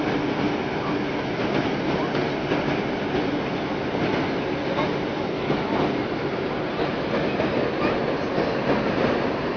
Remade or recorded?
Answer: recorded